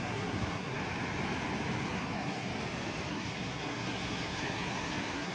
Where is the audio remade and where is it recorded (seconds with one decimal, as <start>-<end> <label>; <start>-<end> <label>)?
0.0-0.8 remade; 0.8-1.9 recorded; 1.9-2.5 remade; 2.5-3.1 recorded; 3.1-5.3 remade